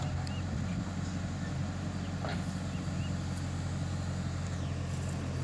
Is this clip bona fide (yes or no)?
yes